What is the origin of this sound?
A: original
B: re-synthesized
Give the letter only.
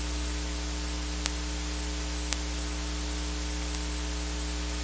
A